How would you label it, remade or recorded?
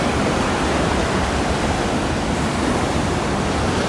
remade